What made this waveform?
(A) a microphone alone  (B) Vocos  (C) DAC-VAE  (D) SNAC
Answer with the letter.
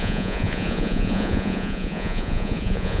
B